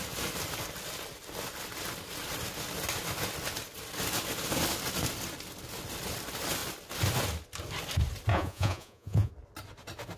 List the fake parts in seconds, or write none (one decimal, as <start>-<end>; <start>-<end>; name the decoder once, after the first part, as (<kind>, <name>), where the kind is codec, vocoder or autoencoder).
8.3-9.3 (vocoder, Vocos)